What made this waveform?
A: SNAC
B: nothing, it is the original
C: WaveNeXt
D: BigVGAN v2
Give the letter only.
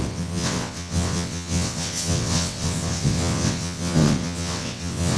C